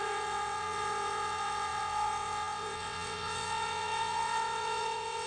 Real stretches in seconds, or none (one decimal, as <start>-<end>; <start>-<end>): none